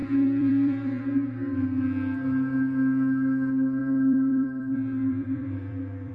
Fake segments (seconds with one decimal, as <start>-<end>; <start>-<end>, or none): 0.0-1.0; 3.8-6.1